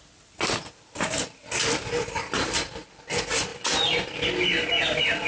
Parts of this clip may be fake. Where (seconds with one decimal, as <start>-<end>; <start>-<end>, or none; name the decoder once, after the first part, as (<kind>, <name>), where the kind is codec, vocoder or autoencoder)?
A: none